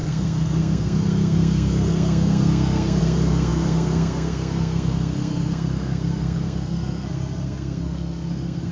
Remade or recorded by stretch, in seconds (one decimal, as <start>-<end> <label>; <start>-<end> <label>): 0.0-8.7 remade